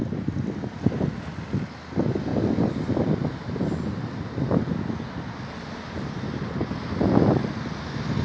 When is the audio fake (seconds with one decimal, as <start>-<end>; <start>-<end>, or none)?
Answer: none